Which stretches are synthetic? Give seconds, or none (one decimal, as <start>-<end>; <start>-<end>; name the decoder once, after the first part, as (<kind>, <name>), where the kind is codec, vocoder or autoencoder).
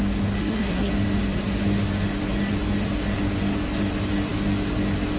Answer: 0.4-0.9 (codec, SNAC)